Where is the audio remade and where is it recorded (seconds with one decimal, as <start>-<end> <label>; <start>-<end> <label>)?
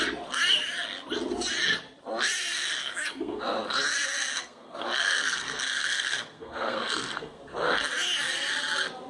0.0-2.8 recorded; 2.8-3.4 remade; 3.4-4.3 recorded; 4.3-7.4 remade; 7.4-9.1 recorded